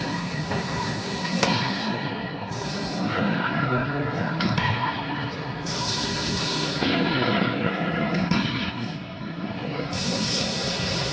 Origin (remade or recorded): remade